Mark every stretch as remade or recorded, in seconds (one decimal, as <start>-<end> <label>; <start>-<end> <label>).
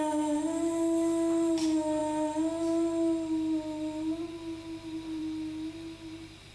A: 0.0-6.5 recorded